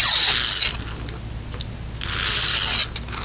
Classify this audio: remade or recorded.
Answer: recorded